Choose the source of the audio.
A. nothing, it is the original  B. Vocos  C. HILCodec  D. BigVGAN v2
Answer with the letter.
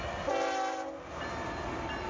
A